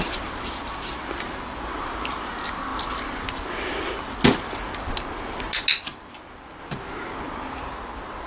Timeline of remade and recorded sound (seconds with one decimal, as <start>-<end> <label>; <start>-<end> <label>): 0.0-8.3 recorded